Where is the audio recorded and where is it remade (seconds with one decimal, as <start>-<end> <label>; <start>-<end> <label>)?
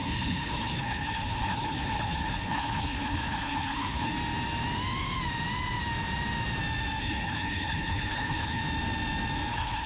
0.0-4.1 remade; 4.1-7.0 recorded; 7.0-8.6 remade; 8.6-9.5 recorded; 9.5-9.9 remade